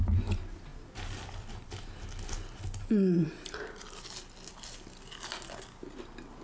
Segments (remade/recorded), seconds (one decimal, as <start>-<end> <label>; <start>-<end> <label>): 0.0-6.4 recorded